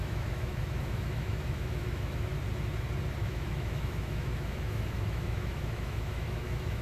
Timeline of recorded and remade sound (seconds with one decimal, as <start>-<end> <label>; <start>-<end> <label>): 0.0-2.3 remade; 2.3-3.2 recorded; 3.2-6.8 remade